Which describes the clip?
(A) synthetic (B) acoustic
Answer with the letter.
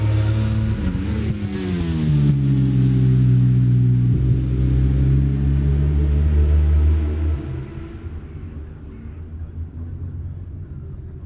B